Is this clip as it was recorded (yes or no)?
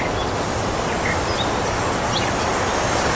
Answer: yes